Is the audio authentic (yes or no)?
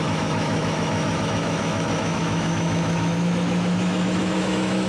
no